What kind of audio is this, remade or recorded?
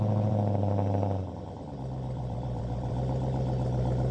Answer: remade